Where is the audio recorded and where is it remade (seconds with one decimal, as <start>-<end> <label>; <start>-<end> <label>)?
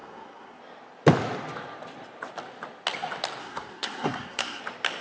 0.0-0.6 remade; 0.6-3.4 recorded; 3.4-4.6 remade; 4.6-5.0 recorded